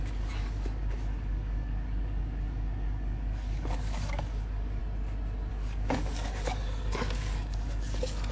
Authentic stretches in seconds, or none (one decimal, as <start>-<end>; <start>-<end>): 4.8-5.5